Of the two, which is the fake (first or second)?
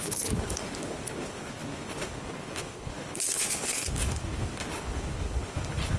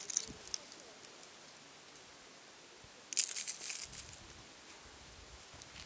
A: first